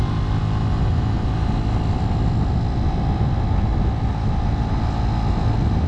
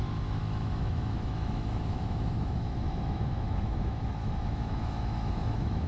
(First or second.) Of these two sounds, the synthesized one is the second